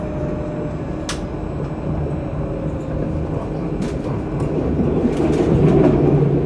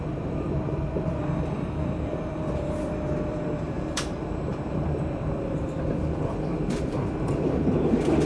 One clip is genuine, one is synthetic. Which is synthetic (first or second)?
second